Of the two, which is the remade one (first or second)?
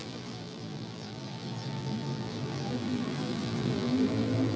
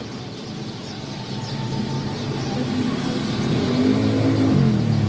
first